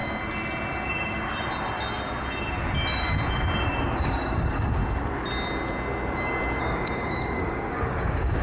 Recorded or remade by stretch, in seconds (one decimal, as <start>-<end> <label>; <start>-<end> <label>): 0.0-3.8 recorded; 3.8-4.8 remade; 4.8-6.6 recorded; 6.6-8.4 remade